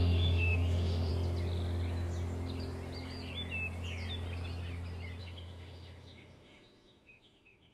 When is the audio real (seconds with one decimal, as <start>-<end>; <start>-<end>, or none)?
1.1-5.2